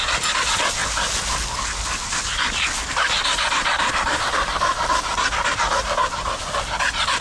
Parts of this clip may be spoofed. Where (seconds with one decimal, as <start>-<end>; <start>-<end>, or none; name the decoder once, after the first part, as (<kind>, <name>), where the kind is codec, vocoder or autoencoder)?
none